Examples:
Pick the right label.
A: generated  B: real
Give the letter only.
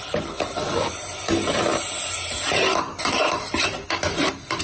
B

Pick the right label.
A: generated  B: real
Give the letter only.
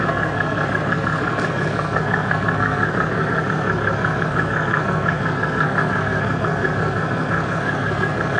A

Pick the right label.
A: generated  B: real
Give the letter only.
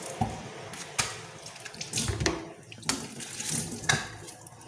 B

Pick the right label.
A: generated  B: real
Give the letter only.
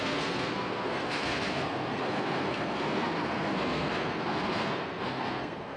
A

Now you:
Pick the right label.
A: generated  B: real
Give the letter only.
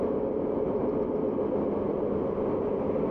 B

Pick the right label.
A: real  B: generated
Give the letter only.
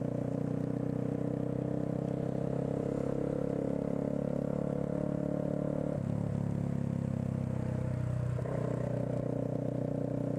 A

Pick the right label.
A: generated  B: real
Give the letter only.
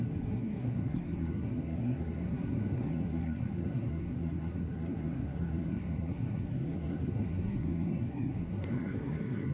A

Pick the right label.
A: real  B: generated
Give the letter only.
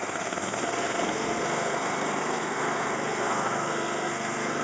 B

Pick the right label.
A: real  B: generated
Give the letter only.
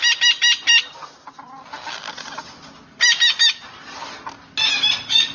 A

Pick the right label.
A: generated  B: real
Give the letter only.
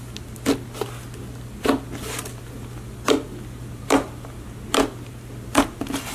B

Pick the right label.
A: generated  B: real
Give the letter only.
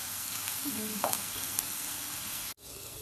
A